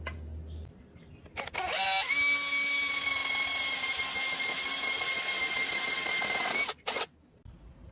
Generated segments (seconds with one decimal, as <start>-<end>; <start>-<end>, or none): none